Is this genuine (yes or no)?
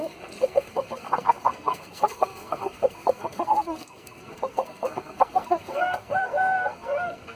no